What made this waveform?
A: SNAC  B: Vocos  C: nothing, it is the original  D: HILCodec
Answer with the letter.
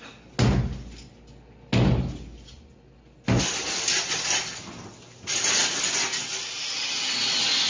C